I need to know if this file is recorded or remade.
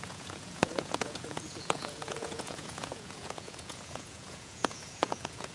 remade